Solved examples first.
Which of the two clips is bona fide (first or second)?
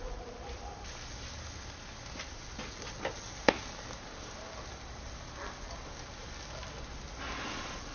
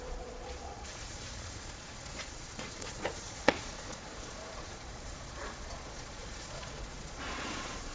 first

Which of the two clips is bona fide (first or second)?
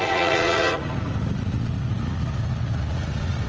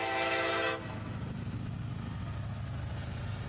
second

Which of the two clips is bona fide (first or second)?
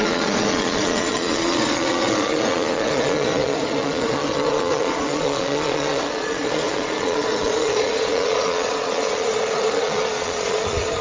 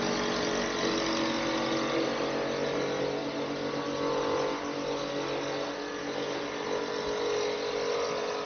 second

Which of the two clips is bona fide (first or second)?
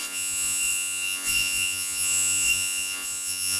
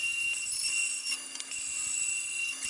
second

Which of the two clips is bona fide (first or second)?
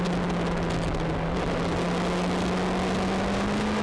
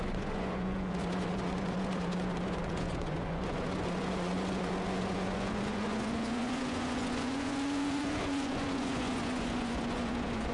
first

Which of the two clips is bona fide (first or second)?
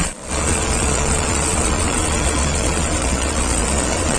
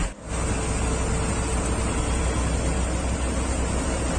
second